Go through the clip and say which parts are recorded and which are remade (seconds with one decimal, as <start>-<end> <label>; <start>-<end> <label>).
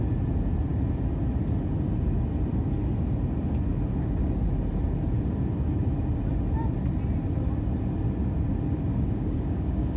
0.0-8.9 recorded; 8.9-10.0 remade